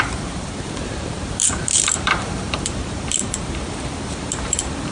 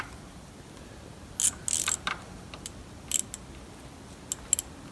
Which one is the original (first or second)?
second